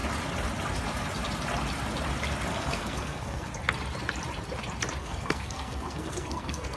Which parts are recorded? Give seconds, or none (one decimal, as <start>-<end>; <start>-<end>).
0.0-2.5; 3.5-5.0